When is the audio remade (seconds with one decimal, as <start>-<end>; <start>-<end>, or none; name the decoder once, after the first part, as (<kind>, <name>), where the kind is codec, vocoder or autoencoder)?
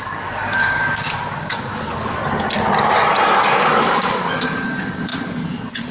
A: 0.0-2.2 (codec, DAC); 3.4-5.9